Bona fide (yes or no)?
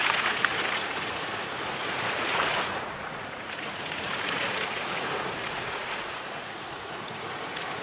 no